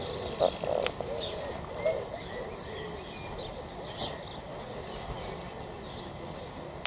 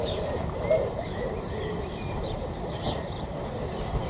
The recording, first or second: first